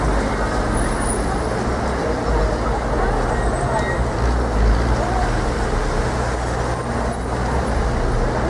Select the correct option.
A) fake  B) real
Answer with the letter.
B